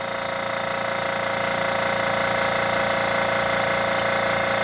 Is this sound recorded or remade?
recorded